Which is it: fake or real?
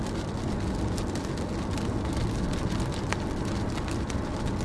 real